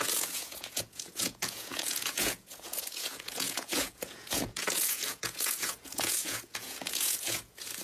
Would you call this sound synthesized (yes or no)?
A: yes